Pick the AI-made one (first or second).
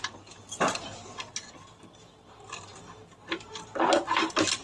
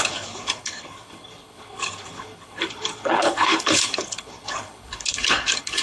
second